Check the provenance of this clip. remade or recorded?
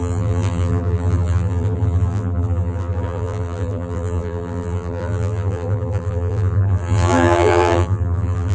remade